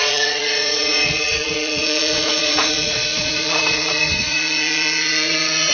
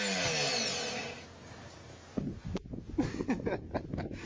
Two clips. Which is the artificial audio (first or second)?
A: first